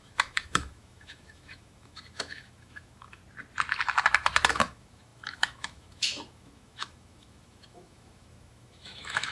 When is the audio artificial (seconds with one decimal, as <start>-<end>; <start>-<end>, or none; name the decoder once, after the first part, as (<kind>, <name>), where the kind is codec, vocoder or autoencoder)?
0.0-3.2 (autoencoder, DAC-VAE); 4.5-9.3